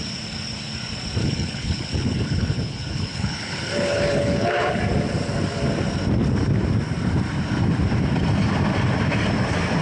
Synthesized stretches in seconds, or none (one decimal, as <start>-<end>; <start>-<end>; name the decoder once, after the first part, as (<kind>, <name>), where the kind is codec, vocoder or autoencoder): 1.2-4.8 (codec, HILCodec)